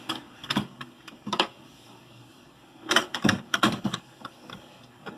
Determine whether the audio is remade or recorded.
remade